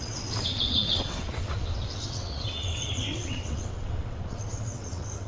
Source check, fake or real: fake